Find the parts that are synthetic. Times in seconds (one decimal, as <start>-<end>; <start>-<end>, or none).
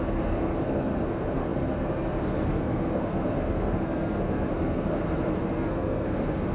0.0-6.5